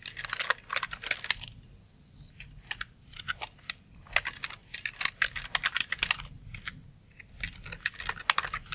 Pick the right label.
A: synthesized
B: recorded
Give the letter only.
B